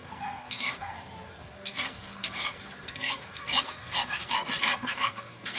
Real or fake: fake